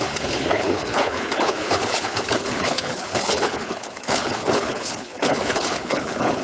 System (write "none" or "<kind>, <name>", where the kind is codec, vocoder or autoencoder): codec, HILCodec